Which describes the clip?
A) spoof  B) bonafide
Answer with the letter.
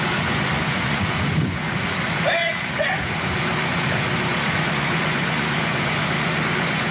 A